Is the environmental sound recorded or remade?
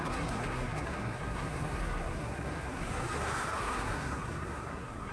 remade